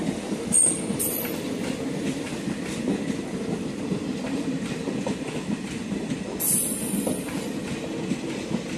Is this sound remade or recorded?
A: recorded